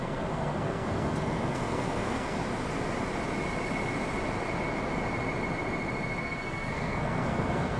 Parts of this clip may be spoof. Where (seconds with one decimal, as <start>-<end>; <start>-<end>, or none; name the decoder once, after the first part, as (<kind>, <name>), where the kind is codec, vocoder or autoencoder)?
0.0-2.4 (codec, SNAC); 6.2-7.8